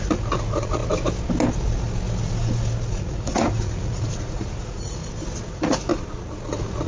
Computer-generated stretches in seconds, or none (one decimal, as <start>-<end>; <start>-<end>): 0.0-0.8; 2.9-5.0; 5.5-5.9; 6.5-6.9